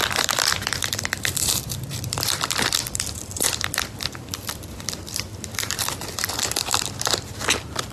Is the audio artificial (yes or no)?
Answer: yes